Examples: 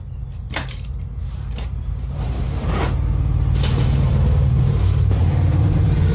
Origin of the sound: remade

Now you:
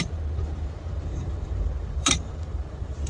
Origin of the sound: remade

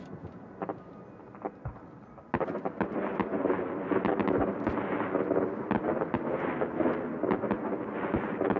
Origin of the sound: recorded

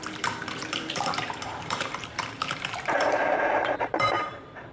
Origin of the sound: remade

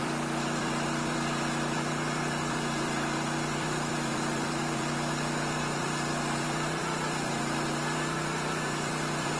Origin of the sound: remade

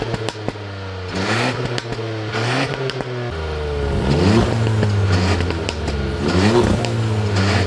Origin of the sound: recorded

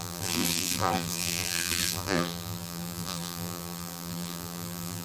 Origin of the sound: remade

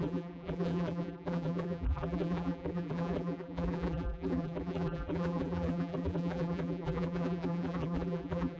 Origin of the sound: remade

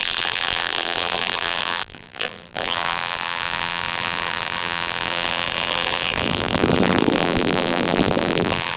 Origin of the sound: remade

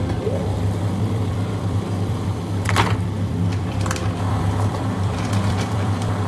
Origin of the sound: remade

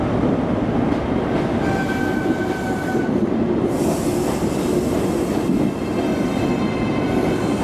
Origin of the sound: recorded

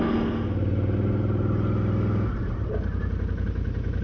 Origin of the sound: recorded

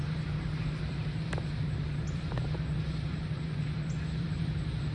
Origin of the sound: remade